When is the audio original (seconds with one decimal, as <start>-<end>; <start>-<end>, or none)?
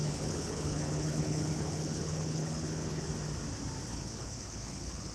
3.1-3.9